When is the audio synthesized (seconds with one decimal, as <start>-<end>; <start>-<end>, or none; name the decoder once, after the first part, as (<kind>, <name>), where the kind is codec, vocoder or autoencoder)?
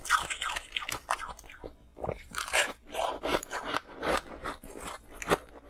1.9-2.7 (vocoder, BigVGAN v2); 3.3-4.7